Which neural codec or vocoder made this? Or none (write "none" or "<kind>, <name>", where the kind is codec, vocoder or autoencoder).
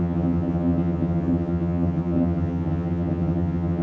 vocoder, HiFi-GAN